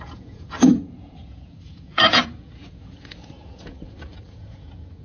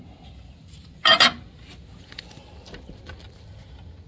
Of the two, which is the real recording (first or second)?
second